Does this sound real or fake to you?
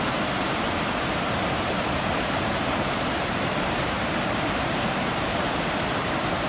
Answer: fake